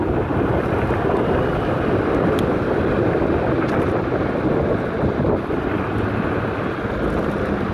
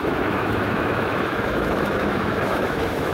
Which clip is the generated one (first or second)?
second